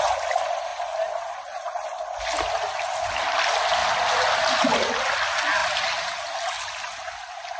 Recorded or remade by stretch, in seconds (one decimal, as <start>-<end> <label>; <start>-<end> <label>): 0.0-5.6 recorded; 5.6-6.3 remade; 6.3-7.6 recorded